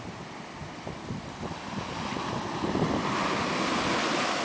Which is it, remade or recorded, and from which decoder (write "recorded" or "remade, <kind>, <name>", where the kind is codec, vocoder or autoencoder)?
recorded